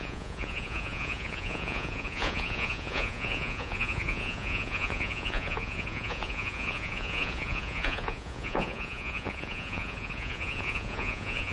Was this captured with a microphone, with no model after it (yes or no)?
no